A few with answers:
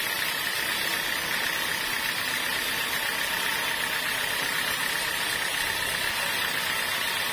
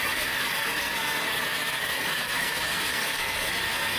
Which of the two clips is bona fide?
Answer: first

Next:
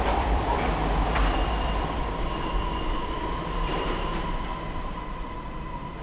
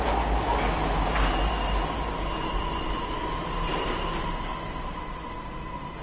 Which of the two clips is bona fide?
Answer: second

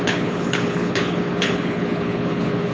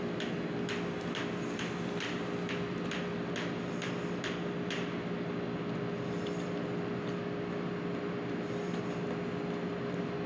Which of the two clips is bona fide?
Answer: second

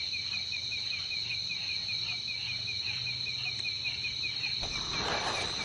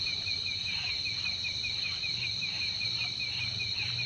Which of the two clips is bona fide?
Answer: first